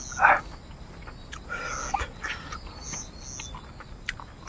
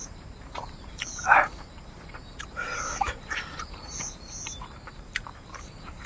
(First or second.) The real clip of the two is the first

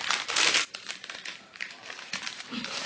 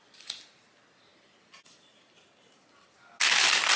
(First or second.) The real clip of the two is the second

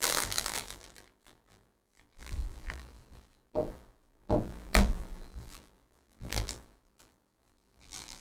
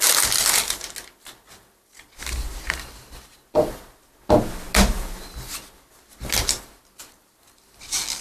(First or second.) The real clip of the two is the second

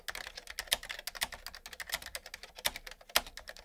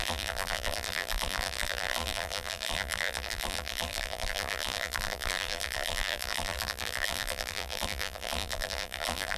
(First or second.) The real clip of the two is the first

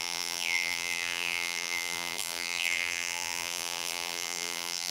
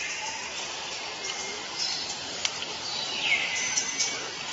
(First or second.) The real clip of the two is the second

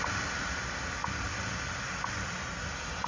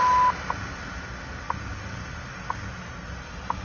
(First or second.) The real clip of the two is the second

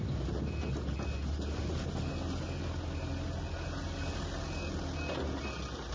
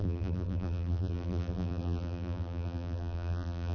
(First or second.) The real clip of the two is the first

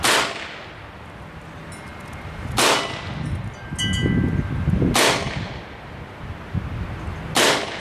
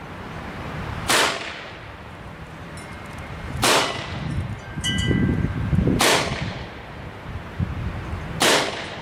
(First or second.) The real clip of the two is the first